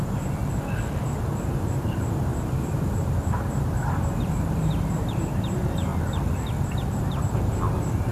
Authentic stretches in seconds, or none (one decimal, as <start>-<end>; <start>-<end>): 0.4-1.0; 5.9-6.6